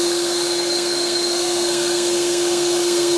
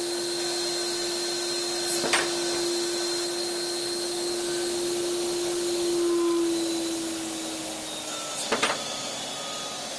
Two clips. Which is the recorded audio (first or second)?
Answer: second